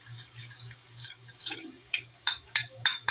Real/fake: fake